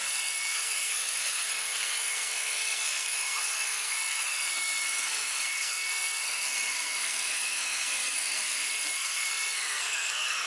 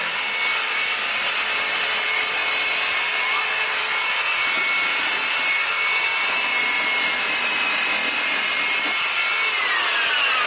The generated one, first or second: first